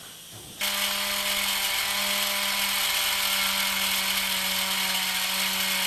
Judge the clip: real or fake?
real